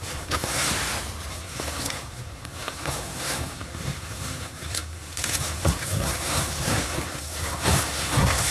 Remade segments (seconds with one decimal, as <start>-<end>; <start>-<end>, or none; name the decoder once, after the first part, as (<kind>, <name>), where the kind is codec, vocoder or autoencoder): 0.0-0.7 (codec, SNAC); 1.3-8.5